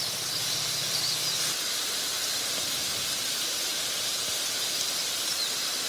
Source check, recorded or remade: remade